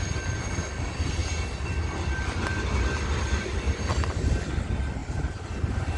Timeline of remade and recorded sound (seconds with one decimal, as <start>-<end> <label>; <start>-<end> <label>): 0.0-6.0 recorded